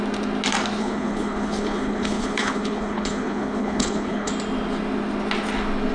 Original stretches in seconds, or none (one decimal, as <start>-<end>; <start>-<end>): 0.0-0.8; 4.3-5.9